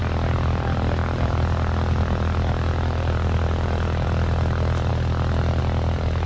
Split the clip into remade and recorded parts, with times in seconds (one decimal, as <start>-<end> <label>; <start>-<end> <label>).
0.0-6.3 remade